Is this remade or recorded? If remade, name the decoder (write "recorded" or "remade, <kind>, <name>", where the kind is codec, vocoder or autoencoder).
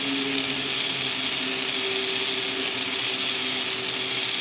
recorded